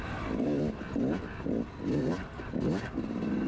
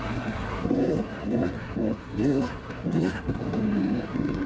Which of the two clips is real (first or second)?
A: first